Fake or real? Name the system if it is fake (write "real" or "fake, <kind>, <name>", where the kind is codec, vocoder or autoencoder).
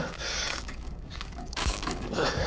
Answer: fake, codec, DAC